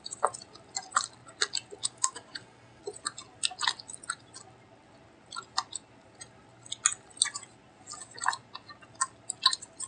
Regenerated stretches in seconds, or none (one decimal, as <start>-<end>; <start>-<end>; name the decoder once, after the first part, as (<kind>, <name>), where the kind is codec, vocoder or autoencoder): 1.8-2.8 (codec, DAC)